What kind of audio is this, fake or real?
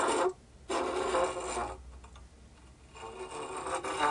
real